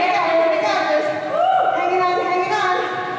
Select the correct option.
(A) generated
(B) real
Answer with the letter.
B